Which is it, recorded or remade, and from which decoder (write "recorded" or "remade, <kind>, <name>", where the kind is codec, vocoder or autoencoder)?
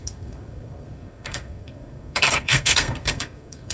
remade, codec, SNAC